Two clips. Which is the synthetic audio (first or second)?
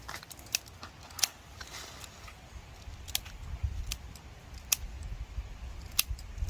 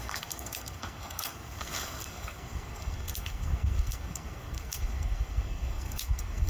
second